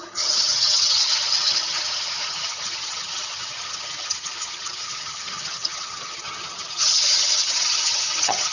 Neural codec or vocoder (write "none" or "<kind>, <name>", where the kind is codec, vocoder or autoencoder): vocoder, HiFi-GAN